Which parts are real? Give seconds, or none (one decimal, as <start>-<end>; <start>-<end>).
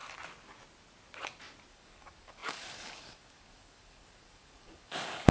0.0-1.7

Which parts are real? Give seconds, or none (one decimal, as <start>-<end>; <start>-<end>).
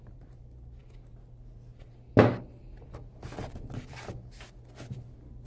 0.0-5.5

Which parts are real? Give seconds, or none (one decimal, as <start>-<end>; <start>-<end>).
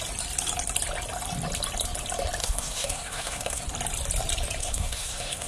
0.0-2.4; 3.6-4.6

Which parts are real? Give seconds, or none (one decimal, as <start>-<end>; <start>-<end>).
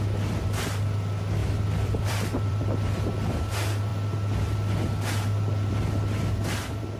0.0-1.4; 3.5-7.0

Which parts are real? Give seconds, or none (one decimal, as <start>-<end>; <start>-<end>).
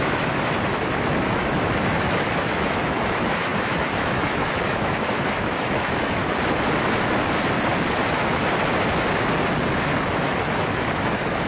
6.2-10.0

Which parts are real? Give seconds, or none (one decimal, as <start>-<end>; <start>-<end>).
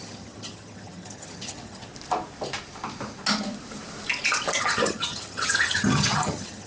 1.9-4.6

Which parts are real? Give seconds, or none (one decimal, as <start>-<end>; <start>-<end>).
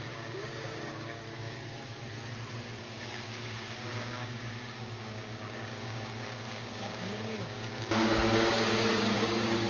2.0-2.8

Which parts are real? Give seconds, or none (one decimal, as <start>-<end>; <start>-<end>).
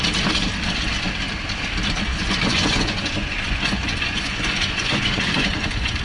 0.0-2.1